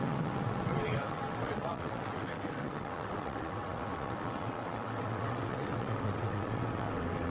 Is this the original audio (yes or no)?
no